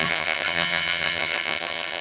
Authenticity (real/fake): fake